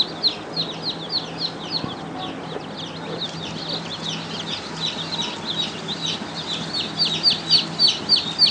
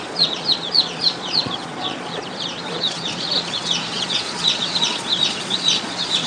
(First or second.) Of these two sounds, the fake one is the second